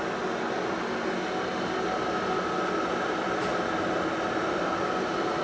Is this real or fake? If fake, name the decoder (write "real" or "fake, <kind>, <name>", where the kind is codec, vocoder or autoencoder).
real